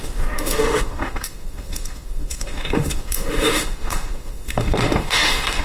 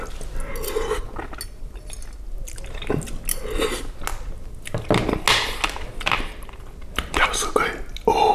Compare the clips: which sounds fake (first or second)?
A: first